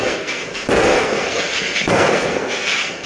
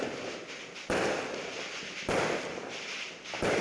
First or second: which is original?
second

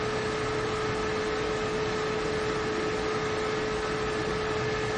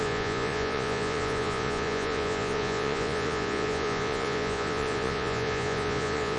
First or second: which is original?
first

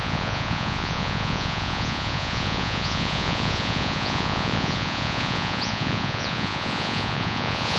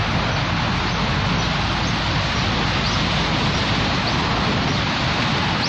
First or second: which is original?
second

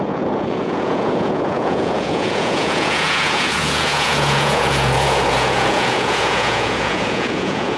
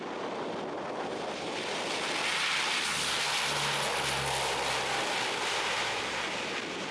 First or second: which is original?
second